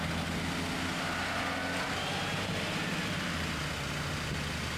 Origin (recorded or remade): recorded